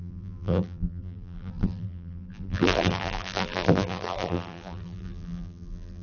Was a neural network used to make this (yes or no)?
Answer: yes